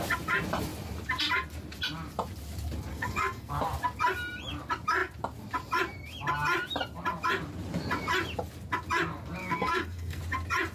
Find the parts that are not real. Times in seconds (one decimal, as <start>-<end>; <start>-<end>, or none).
2.9-3.5; 9.4-10.2